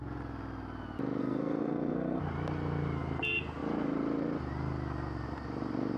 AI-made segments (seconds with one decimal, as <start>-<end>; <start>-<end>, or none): 1.2-2.2